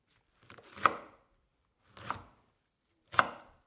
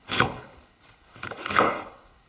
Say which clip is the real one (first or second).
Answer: first